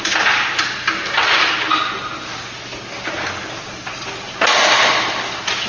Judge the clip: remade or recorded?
recorded